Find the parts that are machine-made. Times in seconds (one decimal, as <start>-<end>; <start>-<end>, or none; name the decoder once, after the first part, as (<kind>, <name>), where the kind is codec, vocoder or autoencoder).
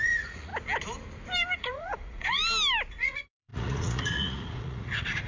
0.0-0.5 (vocoder, Vocos); 1.6-2.4; 2.9-5.3